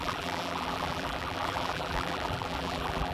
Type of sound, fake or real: fake